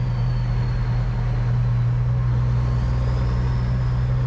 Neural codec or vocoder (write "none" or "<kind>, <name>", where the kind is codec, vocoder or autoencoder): none